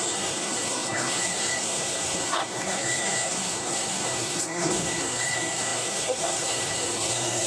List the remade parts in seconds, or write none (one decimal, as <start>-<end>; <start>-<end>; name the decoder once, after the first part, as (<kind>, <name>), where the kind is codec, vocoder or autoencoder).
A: 0.0-7.5 (codec, SNAC)